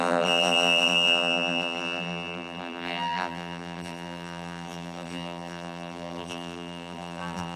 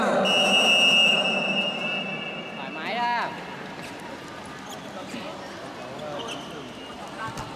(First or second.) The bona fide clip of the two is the second